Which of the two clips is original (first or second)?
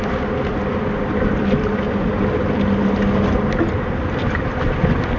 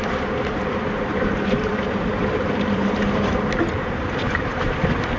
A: first